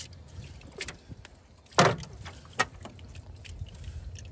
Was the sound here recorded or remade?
recorded